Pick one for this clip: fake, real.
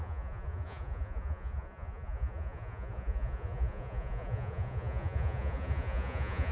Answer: fake